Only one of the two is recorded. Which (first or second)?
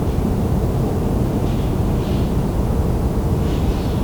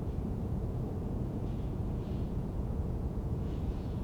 first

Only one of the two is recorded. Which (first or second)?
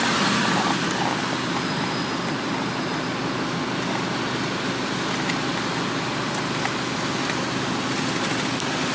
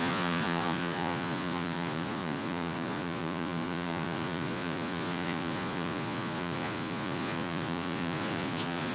first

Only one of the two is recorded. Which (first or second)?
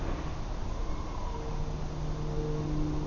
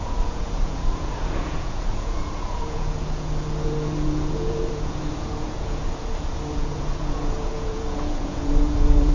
first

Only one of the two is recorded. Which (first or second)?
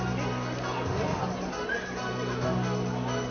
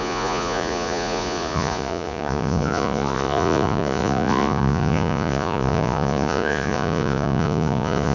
first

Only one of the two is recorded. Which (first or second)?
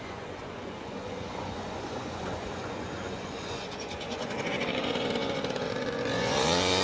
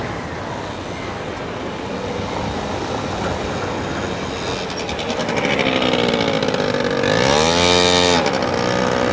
second